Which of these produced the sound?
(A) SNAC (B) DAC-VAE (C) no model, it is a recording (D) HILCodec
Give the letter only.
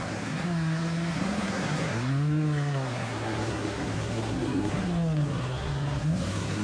A